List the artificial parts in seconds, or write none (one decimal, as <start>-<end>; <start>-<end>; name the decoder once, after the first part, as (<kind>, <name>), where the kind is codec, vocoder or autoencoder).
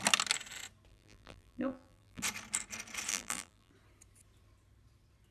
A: 0.9-2.2 (vocoder, BigVGAN v2); 3.1-3.7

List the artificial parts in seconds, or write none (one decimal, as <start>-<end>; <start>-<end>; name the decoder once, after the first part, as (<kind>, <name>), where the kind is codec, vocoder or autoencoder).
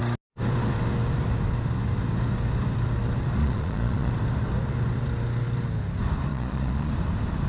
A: 3.4-4.1 (vocoder, Vocos); 6.3-6.9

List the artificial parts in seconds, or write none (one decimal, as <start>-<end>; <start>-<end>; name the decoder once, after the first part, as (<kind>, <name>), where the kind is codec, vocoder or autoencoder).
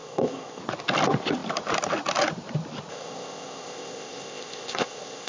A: 0.0-0.6 (codec, ZipCodec); 2.9-5.3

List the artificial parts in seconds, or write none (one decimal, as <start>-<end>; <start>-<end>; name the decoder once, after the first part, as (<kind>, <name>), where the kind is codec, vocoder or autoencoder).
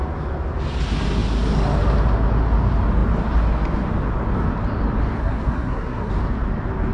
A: 5.2-6.1 (codec, SNAC)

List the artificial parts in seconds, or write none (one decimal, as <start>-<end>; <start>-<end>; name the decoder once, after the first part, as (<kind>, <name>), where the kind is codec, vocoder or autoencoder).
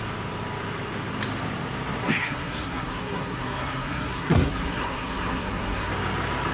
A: 2.0-5.9 (codec, SNAC)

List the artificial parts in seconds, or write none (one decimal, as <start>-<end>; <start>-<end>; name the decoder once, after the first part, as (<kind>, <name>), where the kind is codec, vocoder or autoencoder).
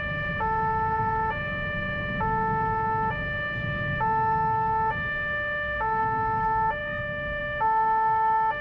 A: none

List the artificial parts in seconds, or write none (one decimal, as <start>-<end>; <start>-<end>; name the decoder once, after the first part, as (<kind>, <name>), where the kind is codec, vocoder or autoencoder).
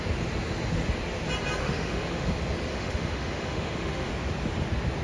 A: 1.6-2.3 (autoencoder, DAC-VAE); 2.7-4.1